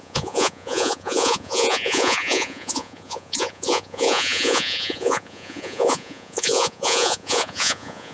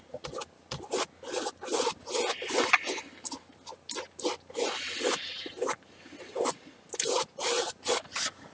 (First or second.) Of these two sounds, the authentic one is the second